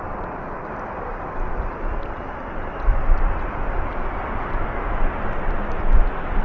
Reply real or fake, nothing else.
real